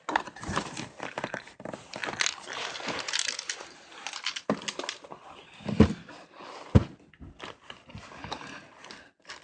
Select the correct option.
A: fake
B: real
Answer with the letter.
B